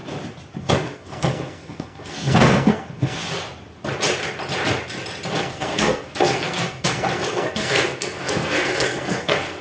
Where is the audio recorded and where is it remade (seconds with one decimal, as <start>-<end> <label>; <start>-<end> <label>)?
0.0-0.6 recorded; 0.6-3.2 remade; 3.2-5.4 recorded; 5.4-9.6 remade